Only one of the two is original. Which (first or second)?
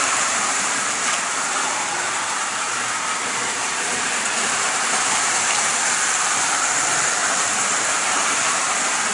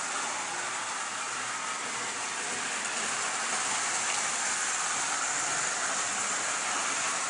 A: second